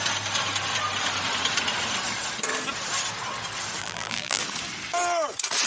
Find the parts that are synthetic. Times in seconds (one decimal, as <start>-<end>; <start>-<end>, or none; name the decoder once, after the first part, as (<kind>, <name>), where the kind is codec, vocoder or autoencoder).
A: 3.8-4.4 (vocoder, BigVGAN v2)